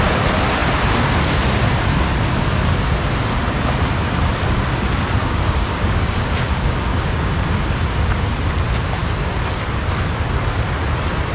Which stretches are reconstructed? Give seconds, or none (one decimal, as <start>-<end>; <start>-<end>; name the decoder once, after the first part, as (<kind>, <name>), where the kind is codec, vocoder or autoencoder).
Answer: 5.2-7.3 (codec, DAC)